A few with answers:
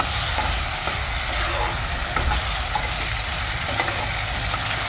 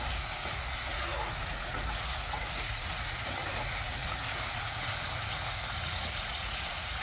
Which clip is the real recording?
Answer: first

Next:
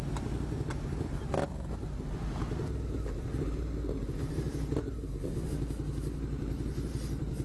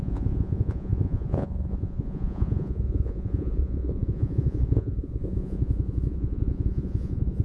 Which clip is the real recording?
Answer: first